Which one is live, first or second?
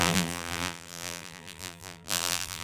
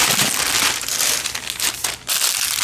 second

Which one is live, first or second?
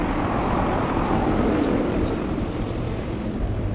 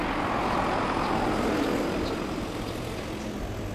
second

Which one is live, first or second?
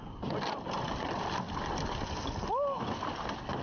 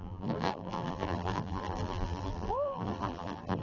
first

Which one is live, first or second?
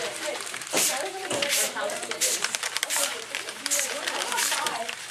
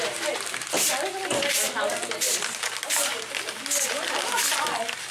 second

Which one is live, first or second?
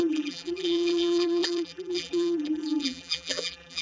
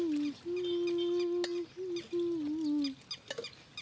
second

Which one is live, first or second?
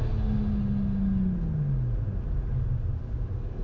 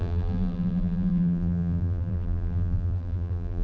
first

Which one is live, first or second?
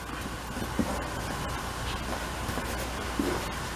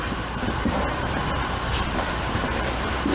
first